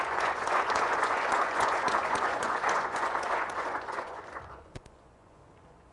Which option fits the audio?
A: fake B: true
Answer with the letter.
A